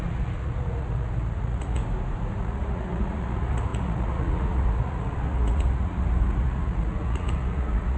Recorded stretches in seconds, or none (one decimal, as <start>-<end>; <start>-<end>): 1.8-2.4